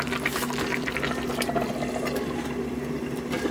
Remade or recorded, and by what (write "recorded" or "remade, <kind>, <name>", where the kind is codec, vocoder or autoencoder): recorded